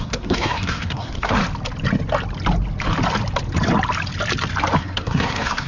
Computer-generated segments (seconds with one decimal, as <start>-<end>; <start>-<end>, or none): 0.0-1.4; 4.8-5.7